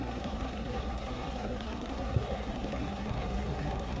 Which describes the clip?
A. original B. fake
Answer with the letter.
B